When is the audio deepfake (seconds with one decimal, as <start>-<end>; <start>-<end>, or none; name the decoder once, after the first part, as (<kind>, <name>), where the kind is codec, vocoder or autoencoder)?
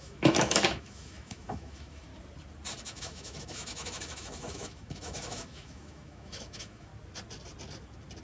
0.0-2.1 (autoencoder, DAC-VAE); 2.8-6.9